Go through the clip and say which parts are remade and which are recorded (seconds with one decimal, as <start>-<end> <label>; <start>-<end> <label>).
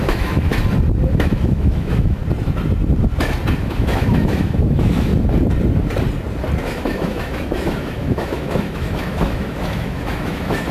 0.0-0.5 remade; 0.5-1.1 recorded; 1.1-2.2 remade; 2.2-3.6 recorded; 3.6-5.1 remade; 5.1-6.6 recorded; 6.6-10.7 remade